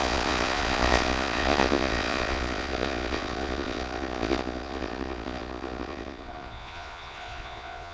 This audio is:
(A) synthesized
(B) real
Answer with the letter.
A